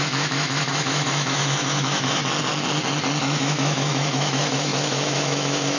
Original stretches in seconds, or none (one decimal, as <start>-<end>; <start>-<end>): 2.2-3.2

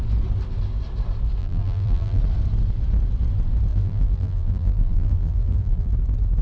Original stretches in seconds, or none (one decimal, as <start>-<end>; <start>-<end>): 0.0-1.4; 2.2-3.7; 5.9-6.4

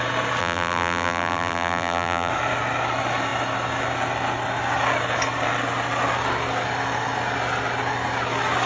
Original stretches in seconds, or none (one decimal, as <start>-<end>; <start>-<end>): 0.0-0.4; 2.3-8.7

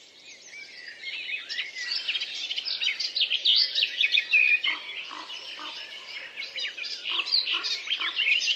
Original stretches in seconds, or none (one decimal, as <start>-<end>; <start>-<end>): 0.0-3.5; 4.2-8.6

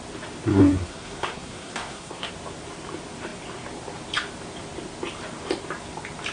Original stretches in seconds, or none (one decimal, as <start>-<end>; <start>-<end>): 0.0-0.5; 2.3-6.3